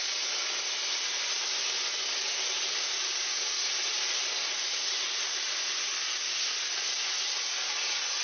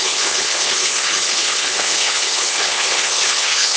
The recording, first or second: first